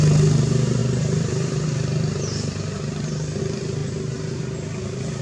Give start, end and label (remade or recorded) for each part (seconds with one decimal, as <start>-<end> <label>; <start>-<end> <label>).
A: 0.0-0.8 recorded; 0.8-3.4 remade; 3.4-3.8 recorded; 3.8-4.4 remade; 4.4-5.2 recorded

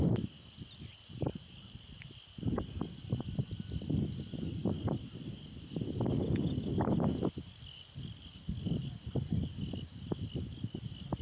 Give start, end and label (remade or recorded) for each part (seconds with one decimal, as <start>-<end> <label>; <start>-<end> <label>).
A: 0.0-0.9 recorded; 0.9-2.1 remade; 2.1-11.2 recorded

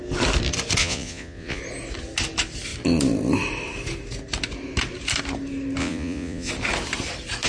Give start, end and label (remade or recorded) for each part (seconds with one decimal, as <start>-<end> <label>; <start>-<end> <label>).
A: 0.0-0.8 recorded; 0.8-1.6 remade; 1.6-5.8 recorded; 5.8-6.5 remade; 6.5-7.5 recorded

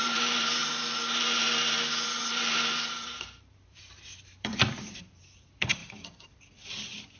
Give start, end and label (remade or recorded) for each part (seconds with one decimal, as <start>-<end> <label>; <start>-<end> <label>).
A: 0.0-4.5 remade; 4.5-5.1 recorded; 5.1-5.8 remade; 5.8-7.2 recorded

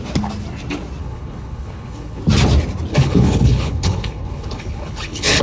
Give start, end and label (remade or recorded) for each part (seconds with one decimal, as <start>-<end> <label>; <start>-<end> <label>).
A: 0.0-1.0 recorded; 1.0-2.2 remade; 2.2-2.9 recorded; 2.9-5.4 remade

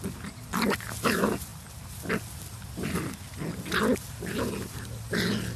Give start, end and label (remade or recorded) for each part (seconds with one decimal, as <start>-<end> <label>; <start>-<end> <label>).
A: 0.0-5.6 recorded

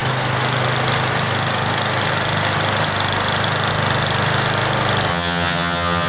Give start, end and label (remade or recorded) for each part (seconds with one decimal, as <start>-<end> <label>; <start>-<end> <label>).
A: 0.0-5.1 recorded; 5.1-6.1 remade